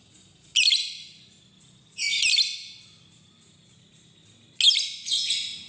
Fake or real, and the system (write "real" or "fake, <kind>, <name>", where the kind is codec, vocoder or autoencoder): real